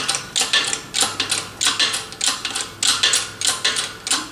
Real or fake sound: real